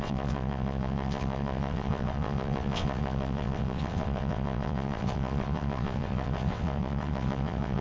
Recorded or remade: remade